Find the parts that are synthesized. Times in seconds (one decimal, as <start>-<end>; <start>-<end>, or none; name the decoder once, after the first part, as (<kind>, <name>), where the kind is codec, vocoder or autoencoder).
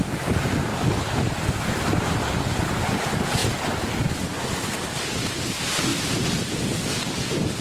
0.7-1.3 (vocoder, BigVGAN v2); 5.9-7.6